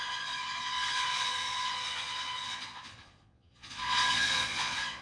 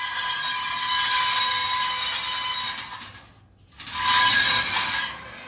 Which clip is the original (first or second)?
second